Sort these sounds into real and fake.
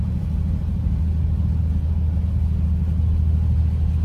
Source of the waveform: real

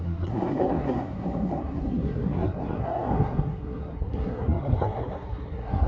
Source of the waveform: fake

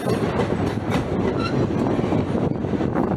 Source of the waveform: real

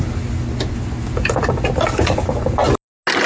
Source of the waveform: real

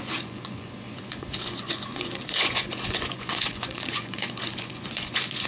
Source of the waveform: fake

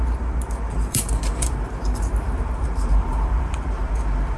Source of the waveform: fake